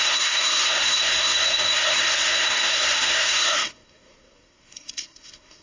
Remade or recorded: remade